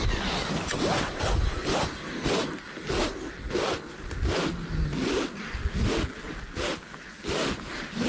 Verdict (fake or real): real